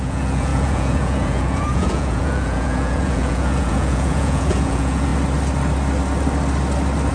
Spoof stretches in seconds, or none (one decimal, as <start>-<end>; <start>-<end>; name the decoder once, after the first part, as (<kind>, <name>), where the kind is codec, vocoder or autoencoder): 0.0-5.1 (vocoder, Vocos)